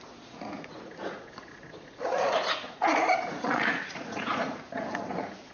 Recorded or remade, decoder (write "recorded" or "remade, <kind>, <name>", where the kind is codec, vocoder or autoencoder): remade, vocoder, Vocos